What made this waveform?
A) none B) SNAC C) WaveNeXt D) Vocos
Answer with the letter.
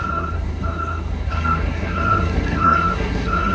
B